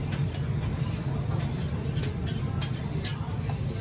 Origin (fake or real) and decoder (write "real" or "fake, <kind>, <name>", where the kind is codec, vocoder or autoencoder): real